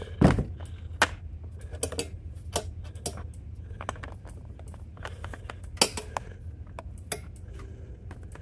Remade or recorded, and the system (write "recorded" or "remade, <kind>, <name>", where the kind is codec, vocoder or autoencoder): recorded